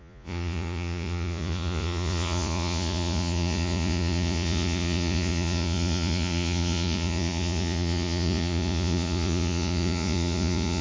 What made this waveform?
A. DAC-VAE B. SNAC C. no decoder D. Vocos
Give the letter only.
D